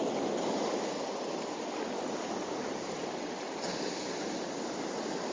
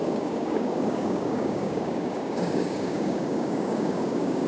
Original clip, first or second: first